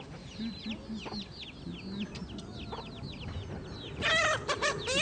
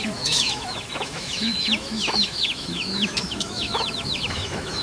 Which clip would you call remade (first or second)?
second